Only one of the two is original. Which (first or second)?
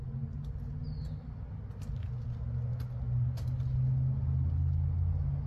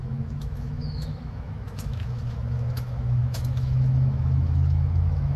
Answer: first